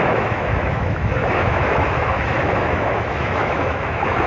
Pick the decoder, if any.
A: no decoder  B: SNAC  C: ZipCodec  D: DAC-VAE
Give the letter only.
D